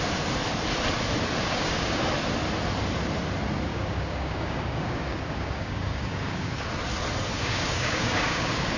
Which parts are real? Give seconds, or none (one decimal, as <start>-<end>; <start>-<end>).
0.0-1.4; 2.0-3.7; 6.7-7.3